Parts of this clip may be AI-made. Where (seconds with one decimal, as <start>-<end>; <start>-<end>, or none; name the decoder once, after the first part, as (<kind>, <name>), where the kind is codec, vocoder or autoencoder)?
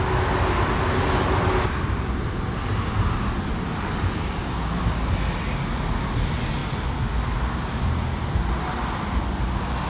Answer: none